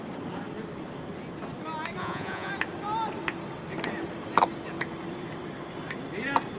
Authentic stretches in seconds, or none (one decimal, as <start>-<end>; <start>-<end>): 0.0-2.0; 2.5-6.6